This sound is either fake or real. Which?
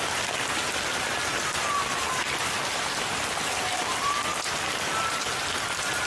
real